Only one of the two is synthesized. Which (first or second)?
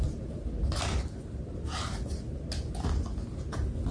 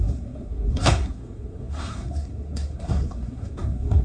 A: second